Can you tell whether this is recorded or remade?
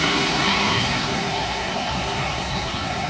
remade